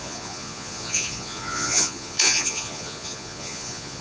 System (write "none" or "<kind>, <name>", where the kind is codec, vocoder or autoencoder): vocoder, Vocos